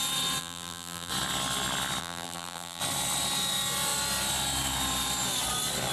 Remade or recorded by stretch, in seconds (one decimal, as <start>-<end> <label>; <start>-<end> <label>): 0.0-0.4 recorded; 0.4-1.1 remade; 1.1-2.0 recorded; 2.0-2.8 remade; 2.8-5.9 recorded